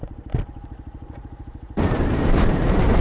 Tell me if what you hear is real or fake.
fake